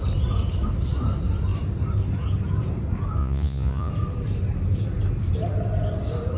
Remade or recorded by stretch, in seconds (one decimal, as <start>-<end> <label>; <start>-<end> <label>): 0.0-3.2 recorded; 3.2-3.9 remade; 3.9-6.4 recorded